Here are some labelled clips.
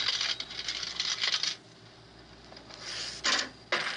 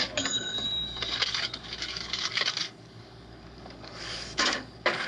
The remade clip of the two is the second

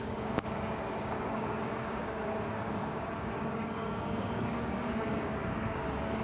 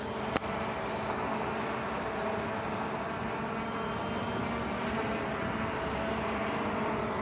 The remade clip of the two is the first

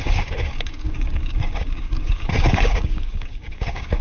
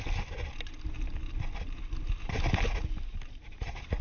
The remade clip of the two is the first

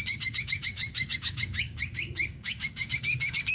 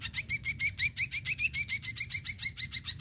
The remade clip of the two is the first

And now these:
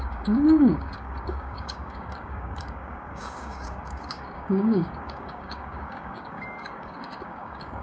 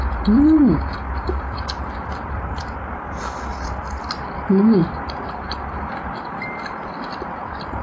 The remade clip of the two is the first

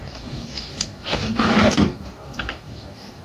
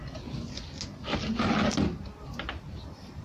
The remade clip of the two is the first